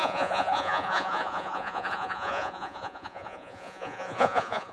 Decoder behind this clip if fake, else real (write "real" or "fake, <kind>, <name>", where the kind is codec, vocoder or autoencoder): fake, vocoder, Vocos